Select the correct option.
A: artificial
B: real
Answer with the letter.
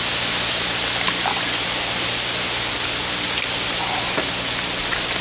B